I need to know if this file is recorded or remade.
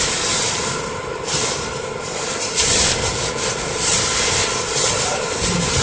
recorded